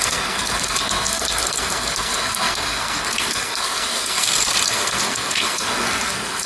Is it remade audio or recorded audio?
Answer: remade